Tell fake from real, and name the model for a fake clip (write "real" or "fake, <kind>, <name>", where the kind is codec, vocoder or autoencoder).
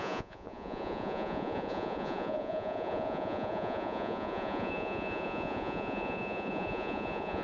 fake, vocoder, Vocos